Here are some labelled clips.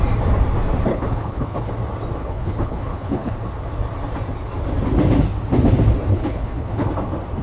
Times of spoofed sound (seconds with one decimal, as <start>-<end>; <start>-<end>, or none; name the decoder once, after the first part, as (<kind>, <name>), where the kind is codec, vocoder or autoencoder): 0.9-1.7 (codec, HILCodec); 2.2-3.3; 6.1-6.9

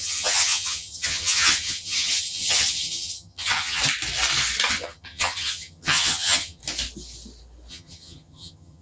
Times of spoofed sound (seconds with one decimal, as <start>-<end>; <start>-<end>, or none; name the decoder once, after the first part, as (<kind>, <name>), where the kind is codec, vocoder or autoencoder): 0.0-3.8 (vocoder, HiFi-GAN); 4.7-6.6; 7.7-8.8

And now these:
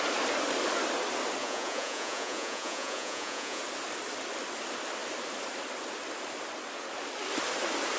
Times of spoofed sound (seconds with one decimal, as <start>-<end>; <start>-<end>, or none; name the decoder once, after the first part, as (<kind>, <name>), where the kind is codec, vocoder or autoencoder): 1.4-3.6 (vocoder, Vocos)

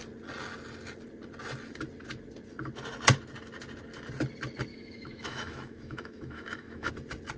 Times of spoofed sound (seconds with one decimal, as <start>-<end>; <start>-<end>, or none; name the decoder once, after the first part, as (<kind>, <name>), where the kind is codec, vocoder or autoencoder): 4.7-6.9 (autoencoder, DAC-VAE)

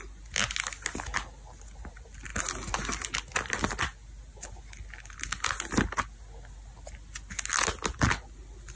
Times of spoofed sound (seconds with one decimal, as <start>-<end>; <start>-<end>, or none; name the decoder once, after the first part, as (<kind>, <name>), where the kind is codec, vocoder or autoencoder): none

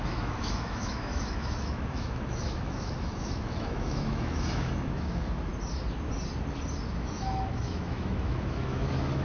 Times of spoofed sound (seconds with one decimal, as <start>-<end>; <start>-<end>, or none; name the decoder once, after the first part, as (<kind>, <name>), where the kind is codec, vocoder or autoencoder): 0.0-5.5 (autoencoder, DAC-VAE); 6.9-9.2

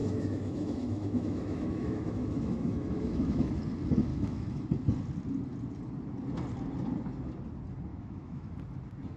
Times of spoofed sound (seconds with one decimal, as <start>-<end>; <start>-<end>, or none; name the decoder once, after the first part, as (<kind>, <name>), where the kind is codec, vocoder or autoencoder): 0.0-3.5 (autoencoder, DAC-VAE); 4.1-4.6; 7.9-8.5